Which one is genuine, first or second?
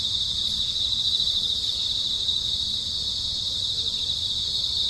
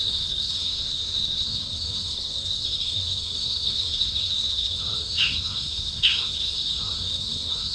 first